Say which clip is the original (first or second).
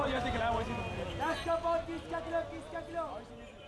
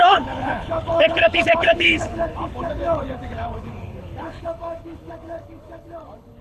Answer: first